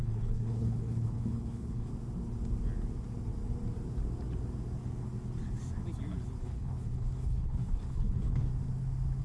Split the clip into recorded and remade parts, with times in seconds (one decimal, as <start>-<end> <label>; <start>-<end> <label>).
0.0-1.9 remade; 1.9-6.4 recorded; 6.4-8.5 remade; 8.5-9.2 recorded

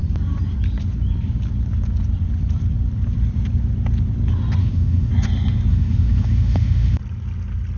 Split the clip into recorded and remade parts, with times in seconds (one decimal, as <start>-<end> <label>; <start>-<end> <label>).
0.0-4.6 recorded; 4.6-5.1 remade; 5.1-5.7 recorded; 5.7-7.0 remade; 7.0-7.8 recorded

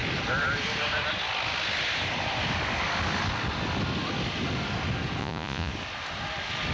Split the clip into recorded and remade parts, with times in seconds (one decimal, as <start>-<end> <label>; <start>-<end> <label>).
0.0-5.2 recorded; 5.2-5.7 remade; 5.7-6.7 recorded